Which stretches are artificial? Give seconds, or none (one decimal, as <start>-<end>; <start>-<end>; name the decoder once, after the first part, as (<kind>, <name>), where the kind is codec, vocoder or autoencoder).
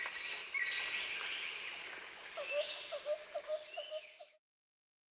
none